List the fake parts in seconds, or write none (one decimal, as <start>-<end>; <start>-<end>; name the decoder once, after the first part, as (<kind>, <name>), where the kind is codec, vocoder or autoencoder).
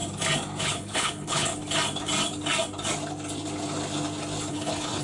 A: 0.6-1.5 (codec, HILCodec); 4.5-5.0